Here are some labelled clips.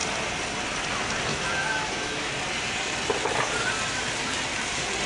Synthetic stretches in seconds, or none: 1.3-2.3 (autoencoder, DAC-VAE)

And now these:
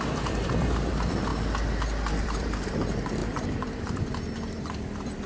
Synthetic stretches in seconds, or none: 0.0-1.3 (vocoder, BigVGAN v2); 2.2-3.2; 3.8-5.3

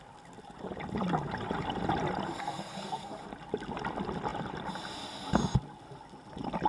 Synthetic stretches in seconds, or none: 2.4-3.1 (codec, SNAC)